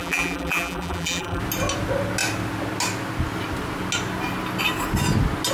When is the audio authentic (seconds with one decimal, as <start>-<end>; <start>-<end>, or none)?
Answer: 1.4-5.5